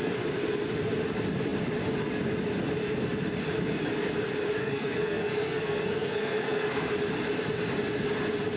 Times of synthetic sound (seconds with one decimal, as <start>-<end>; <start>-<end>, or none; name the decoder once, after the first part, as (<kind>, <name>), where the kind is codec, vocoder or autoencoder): 4.6-6.9 (codec, SNAC)